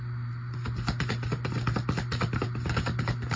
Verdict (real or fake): real